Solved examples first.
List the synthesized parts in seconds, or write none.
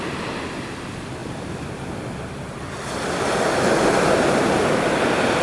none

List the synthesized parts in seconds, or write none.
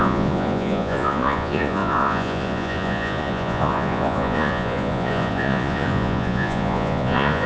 0.0-7.5 (vocoder, Vocos)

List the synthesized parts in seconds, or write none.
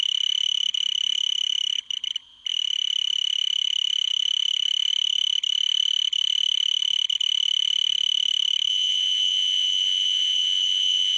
8.7-11.2 (vocoder, Vocos)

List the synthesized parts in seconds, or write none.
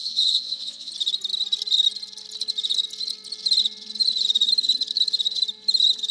0.0-0.9 (vocoder, Vocos)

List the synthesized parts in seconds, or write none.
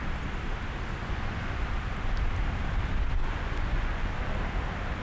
1.0-1.7 (vocoder, Vocos); 3.2-4.1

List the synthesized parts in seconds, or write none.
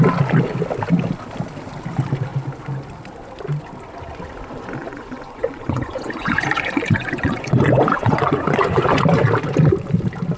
4.8-8.8 (vocoder, Vocos)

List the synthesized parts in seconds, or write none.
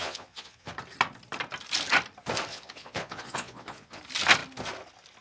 0.0-0.7 (vocoder, Vocos); 2.5-4.0